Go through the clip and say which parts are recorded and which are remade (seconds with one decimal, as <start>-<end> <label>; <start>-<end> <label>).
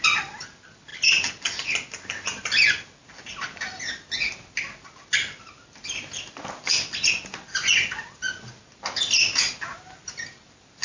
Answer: 0.0-10.8 recorded